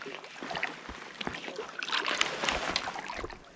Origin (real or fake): real